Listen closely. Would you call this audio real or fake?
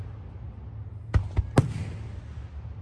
real